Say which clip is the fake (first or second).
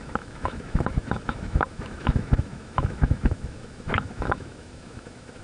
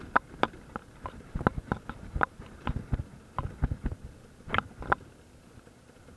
first